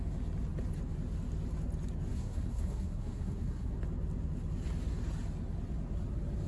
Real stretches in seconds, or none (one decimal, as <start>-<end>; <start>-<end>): 0.0-2.1; 3.8-6.5